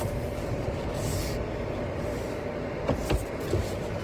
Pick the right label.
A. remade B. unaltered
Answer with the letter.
B